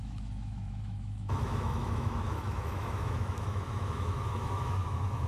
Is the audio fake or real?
fake